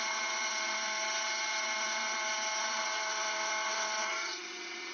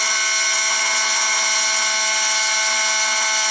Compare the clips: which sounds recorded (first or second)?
second